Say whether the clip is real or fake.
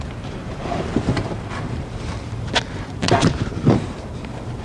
fake